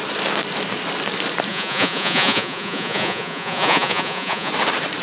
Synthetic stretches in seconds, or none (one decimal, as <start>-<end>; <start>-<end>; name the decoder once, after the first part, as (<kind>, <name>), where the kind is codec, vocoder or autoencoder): 1.5-4.5 (vocoder, Vocos)